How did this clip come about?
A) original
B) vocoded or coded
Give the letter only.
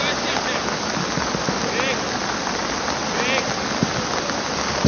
A